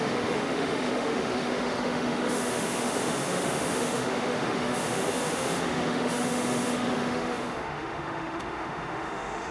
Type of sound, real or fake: fake